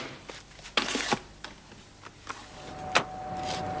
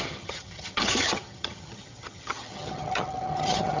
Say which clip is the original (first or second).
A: first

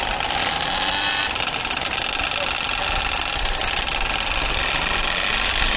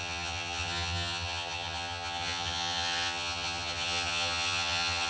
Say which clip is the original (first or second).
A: first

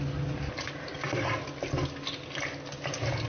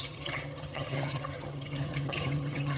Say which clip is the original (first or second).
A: first